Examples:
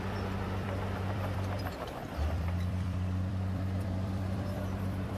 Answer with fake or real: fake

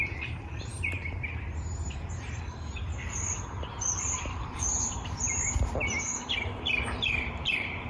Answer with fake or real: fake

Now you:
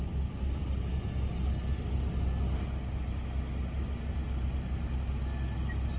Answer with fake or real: real